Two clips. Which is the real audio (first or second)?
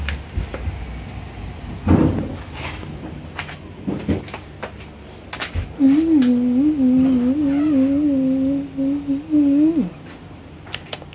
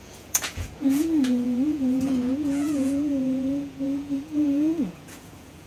first